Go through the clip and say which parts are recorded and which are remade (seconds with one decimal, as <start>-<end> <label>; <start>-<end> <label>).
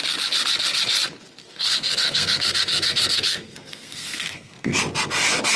0.0-1.4 recorded; 1.4-4.8 remade; 4.8-5.6 recorded